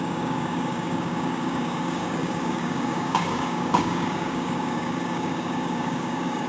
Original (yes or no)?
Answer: no